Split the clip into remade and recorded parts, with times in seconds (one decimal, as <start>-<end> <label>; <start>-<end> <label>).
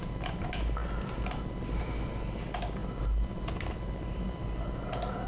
0.0-5.3 recorded